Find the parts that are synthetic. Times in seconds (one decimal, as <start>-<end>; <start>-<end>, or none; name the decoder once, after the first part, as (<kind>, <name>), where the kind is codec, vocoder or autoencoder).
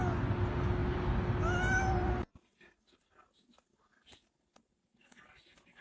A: none